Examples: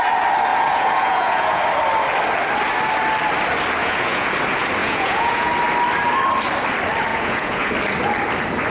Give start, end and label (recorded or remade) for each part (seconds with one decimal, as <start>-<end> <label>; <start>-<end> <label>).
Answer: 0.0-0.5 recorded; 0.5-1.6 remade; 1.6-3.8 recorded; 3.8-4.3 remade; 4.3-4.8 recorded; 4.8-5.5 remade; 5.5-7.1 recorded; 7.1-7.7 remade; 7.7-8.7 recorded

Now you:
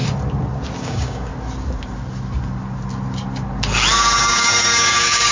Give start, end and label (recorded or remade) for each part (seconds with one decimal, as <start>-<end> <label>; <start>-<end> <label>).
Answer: 0.0-0.8 recorded; 0.8-1.3 remade; 1.3-4.2 recorded; 4.2-5.3 remade

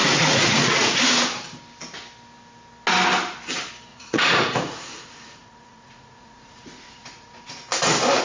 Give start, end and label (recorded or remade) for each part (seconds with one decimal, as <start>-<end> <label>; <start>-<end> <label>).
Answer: 0.0-1.0 remade; 1.0-3.9 recorded; 3.9-7.5 remade; 7.5-8.2 recorded

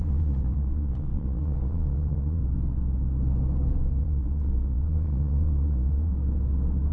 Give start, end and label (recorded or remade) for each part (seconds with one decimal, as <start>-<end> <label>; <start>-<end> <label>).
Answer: 0.0-2.4 remade; 2.4-4.0 recorded; 4.0-6.1 remade; 6.1-6.9 recorded

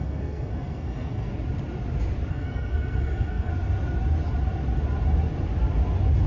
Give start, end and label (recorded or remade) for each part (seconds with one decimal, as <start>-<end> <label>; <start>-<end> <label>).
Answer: 0.0-1.3 remade; 1.3-2.3 recorded; 2.3-3.5 remade; 3.5-6.3 recorded

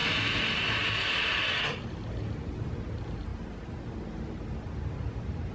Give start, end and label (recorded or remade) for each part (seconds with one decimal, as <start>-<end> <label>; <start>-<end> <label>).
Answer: 0.0-2.5 remade; 2.5-5.5 recorded

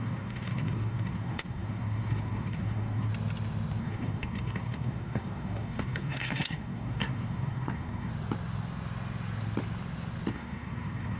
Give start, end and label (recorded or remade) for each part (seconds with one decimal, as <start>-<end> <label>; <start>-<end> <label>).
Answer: 0.0-3.1 remade; 3.1-3.8 recorded; 3.8-8.1 remade; 8.1-10.3 recorded; 10.3-11.2 remade